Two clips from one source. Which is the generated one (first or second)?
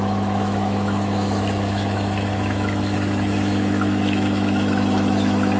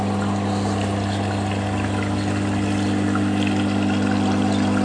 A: first